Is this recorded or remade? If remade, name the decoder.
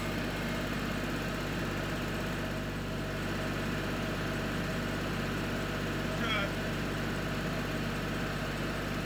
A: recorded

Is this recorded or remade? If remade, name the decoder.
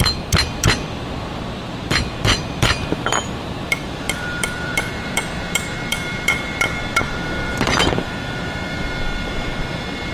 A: remade, vocoder, BigVGAN v2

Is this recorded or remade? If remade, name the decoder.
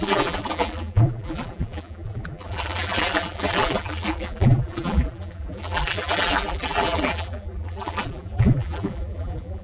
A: remade, vocoder, BigVGAN v2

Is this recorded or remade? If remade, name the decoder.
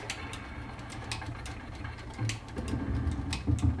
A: recorded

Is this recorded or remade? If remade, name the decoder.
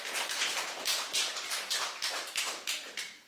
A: remade, vocoder, BigVGAN v2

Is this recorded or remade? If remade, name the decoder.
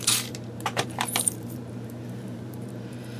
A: remade, vocoder, BigVGAN v2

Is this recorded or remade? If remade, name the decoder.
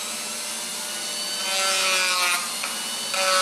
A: recorded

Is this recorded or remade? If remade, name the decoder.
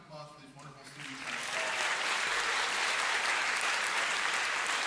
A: remade, vocoder, BigVGAN v2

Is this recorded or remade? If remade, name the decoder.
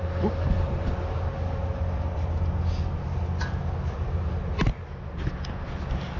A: recorded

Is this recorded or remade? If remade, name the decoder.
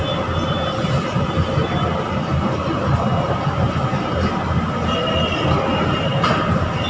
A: recorded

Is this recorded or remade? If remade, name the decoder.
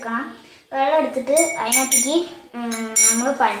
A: recorded